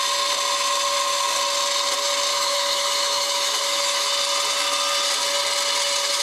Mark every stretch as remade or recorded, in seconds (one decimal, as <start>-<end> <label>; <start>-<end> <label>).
0.0-2.3 recorded; 2.3-4.1 remade; 4.1-6.2 recorded